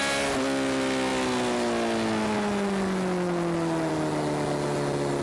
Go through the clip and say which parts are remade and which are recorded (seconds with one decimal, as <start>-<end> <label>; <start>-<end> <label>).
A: 0.0-5.2 recorded